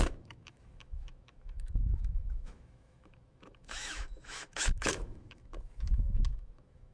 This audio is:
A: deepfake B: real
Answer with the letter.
A